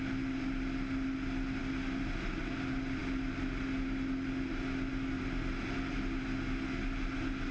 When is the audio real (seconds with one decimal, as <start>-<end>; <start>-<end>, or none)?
0.0-7.5